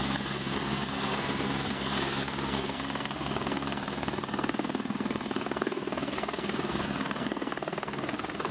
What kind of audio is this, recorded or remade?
remade